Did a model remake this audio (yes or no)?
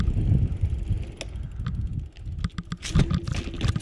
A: no